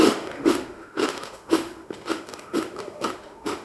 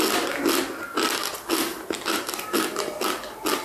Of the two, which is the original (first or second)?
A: second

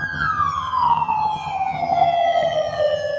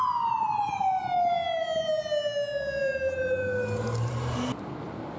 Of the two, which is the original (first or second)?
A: second